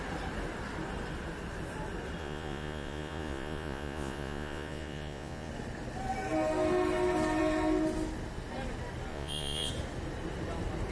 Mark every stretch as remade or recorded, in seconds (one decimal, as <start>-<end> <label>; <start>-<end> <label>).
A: 0.0-2.2 recorded; 2.2-5.5 remade; 5.5-9.1 recorded; 9.1-9.7 remade; 9.7-10.9 recorded